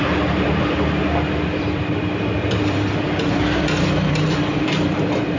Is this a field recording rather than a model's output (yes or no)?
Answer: no